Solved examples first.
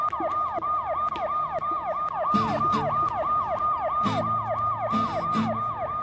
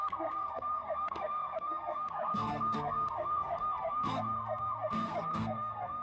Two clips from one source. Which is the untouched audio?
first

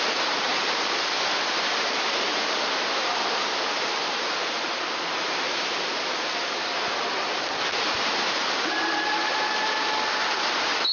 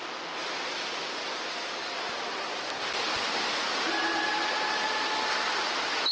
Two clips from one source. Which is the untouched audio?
second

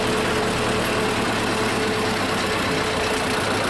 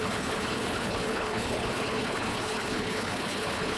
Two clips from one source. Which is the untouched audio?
first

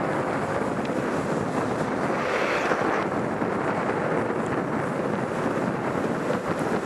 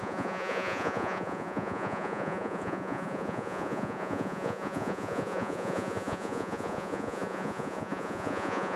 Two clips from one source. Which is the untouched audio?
first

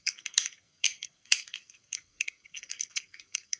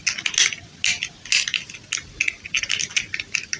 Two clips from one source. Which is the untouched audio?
second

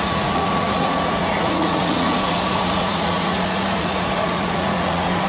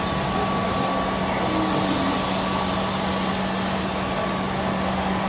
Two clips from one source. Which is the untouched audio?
second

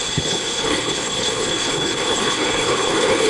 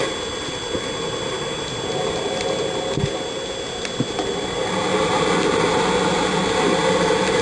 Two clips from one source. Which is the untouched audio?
second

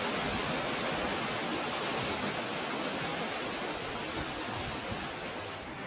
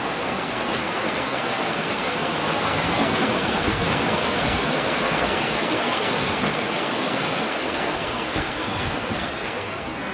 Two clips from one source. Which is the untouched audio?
first